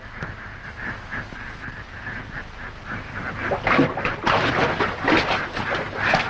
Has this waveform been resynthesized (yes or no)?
no